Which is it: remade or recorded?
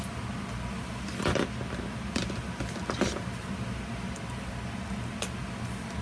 recorded